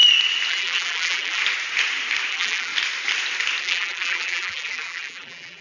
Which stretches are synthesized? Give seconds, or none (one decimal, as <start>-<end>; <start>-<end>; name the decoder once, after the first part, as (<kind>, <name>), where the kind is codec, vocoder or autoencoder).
0.5-1.4 (vocoder, BigVGAN v2); 2.3-2.7; 3.6-5.6